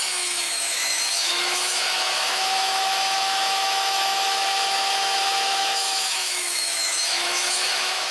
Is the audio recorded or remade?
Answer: remade